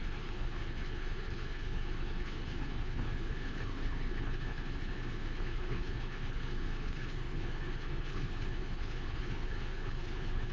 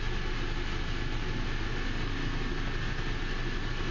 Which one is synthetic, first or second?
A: first